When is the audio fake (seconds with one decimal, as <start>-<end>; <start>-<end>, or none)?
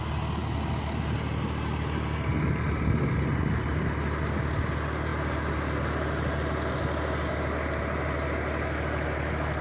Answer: none